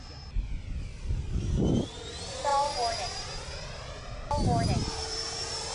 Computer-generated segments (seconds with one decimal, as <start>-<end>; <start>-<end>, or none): 2.5-4.0; 4.9-5.7